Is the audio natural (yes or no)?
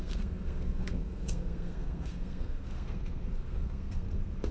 no